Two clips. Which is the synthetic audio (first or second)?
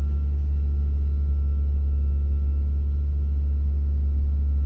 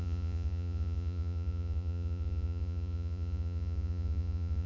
second